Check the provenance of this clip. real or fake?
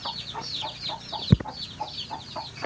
real